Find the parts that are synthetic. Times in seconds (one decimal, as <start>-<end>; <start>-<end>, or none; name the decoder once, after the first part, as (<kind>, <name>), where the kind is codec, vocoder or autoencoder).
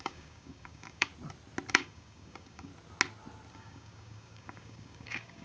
0.0-1.1 (codec, DAC); 1.7-2.7; 3.5-5.4